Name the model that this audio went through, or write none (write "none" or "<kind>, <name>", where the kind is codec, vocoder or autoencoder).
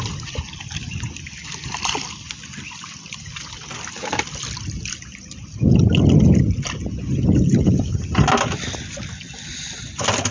none